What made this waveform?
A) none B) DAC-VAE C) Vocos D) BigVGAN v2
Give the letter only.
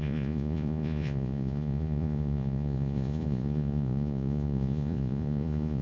C